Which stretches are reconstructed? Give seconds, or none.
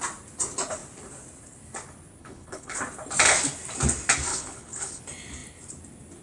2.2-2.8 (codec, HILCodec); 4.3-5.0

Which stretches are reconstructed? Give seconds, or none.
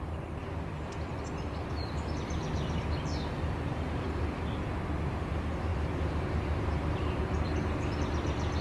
none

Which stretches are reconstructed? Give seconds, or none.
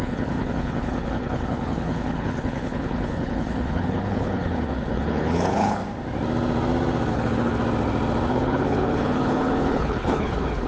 0.0-5.8 (codec, HILCodec); 7.1-7.6; 8.3-10.7